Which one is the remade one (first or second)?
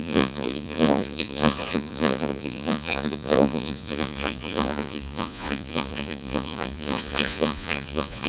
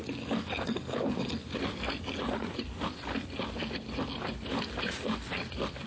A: first